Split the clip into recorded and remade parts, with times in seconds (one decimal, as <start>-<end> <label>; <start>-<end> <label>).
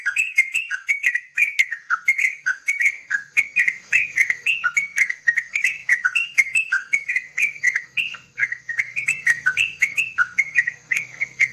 0.0-11.5 remade